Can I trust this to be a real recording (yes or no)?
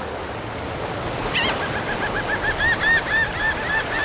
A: yes